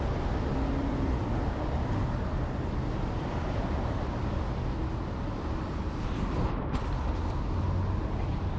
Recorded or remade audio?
recorded